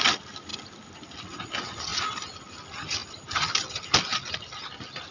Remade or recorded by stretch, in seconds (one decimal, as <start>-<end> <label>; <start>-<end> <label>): 0.0-5.1 recorded